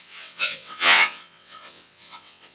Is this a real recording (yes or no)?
no